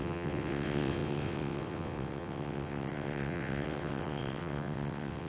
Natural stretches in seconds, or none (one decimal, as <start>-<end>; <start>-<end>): none